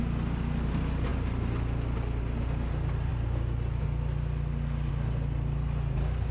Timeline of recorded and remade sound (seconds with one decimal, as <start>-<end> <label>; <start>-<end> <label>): 0.0-6.3 recorded